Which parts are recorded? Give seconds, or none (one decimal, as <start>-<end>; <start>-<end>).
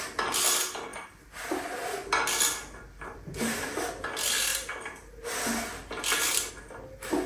0.0-7.3